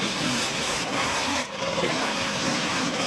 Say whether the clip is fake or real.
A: fake